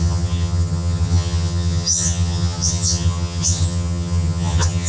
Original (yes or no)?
no